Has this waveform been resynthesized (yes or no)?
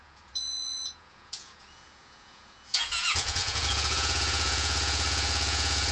yes